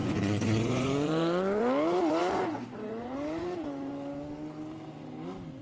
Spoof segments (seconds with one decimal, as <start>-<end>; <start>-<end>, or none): 0.0-1.6; 2.2-3.9